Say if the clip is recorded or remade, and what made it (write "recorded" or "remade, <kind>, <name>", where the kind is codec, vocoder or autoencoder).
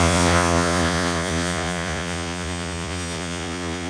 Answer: remade, vocoder, Vocos